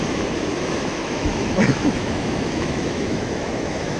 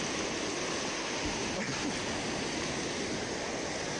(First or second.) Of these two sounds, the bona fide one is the second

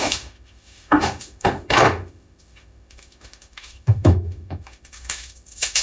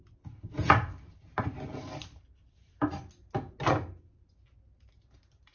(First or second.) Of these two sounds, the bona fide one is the second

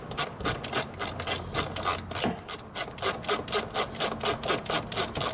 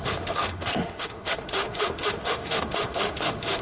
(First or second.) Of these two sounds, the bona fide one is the first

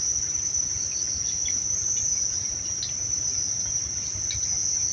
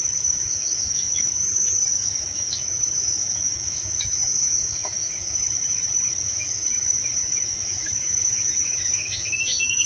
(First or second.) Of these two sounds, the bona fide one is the first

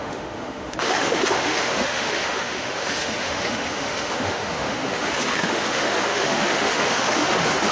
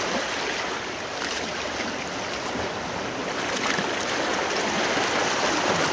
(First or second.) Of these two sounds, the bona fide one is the second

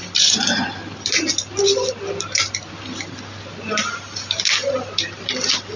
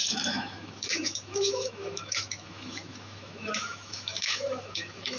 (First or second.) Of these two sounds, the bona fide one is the first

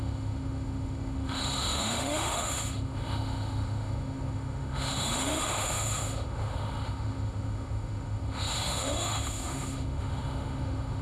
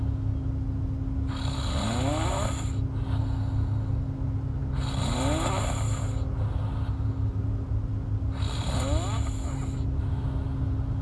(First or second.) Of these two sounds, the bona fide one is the second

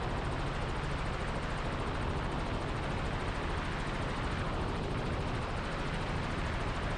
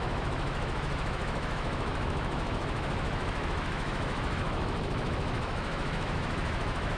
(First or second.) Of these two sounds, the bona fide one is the first